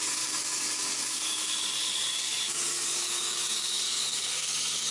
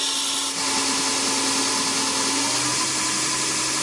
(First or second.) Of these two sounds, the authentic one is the second